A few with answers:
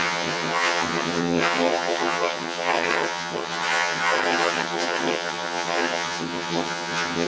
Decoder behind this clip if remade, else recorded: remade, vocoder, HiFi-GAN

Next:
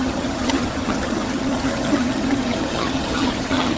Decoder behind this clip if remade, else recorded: remade, vocoder, HiFi-GAN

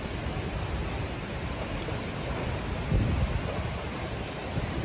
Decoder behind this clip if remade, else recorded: recorded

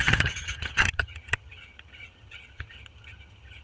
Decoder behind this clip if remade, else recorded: remade, vocoder, HiFi-GAN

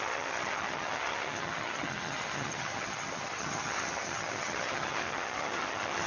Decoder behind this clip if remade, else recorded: remade, vocoder, HiFi-GAN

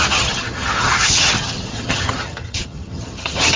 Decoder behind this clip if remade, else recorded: remade, vocoder, HiFi-GAN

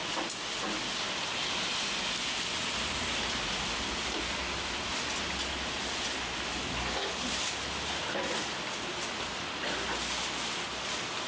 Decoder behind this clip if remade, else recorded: recorded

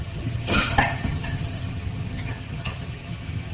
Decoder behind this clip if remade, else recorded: remade, vocoder, HiFi-GAN